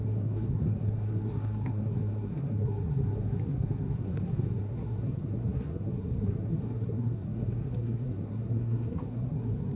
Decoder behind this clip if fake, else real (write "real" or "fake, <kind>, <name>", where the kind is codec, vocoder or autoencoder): fake, codec, SNAC